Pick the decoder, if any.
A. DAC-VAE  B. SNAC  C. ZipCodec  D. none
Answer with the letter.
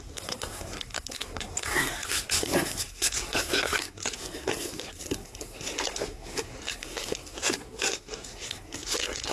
B